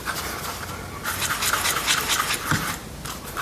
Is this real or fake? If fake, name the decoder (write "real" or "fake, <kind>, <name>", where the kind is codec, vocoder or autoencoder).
real